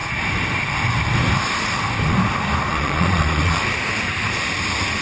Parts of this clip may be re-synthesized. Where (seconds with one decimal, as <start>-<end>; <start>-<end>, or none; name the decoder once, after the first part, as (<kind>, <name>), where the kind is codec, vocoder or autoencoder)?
2.7-3.6 (vocoder, Vocos)